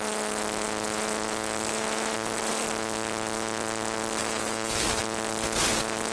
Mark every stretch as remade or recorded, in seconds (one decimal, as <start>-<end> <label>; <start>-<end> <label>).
0.0-4.2 recorded; 4.2-5.0 remade; 5.0-6.1 recorded